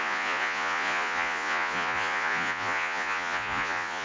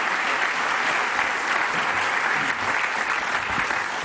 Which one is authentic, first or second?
second